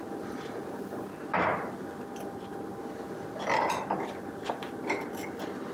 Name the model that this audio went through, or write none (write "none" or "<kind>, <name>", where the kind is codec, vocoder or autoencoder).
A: none